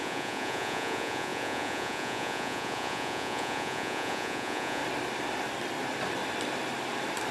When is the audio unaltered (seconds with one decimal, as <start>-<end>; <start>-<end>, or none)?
4.8-7.3